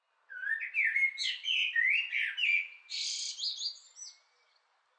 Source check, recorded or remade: recorded